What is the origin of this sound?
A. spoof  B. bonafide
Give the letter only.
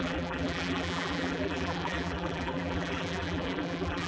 A